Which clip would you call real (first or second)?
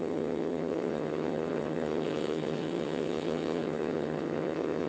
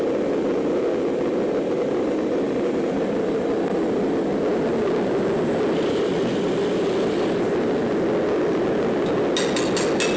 second